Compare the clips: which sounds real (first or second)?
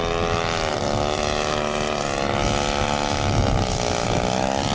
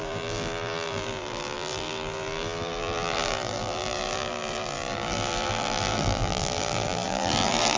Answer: first